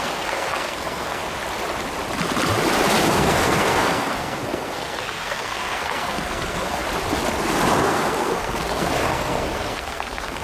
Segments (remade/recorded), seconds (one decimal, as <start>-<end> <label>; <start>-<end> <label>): 0.0-1.2 remade; 1.2-3.1 recorded; 3.1-6.8 remade; 6.8-7.8 recorded; 7.8-10.4 remade